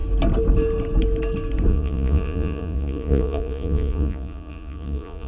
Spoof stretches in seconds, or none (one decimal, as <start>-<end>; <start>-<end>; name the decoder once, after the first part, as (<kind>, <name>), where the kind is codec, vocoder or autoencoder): 1.7-5.3 (vocoder, Vocos)